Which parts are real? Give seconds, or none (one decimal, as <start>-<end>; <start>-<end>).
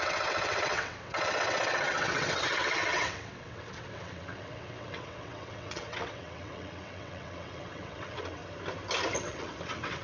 8.4-9.1